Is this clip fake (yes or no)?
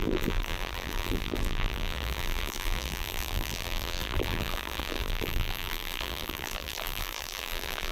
yes